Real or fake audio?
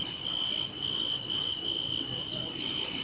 real